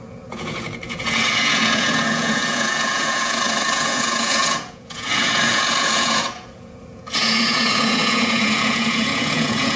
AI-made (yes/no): yes